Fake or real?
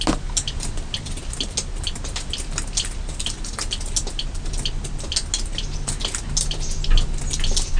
real